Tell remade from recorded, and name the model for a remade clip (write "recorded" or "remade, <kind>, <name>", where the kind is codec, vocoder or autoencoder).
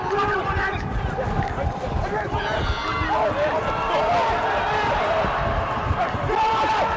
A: recorded